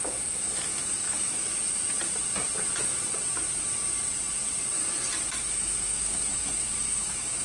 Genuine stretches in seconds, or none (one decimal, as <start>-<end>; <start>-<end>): 1.4-5.3